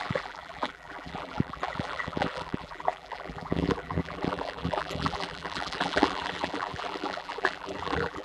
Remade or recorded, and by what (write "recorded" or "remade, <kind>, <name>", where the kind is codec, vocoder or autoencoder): remade, vocoder, BigVGAN v2